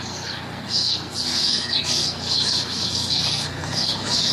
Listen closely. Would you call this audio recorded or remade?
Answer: remade